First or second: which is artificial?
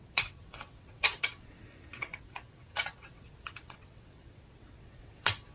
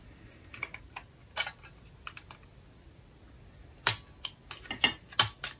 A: first